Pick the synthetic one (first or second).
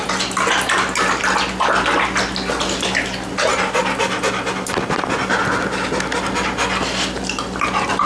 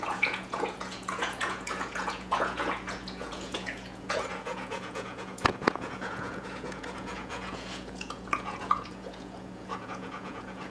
second